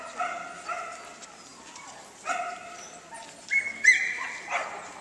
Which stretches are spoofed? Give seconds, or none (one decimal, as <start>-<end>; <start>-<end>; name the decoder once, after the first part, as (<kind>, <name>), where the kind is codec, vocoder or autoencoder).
none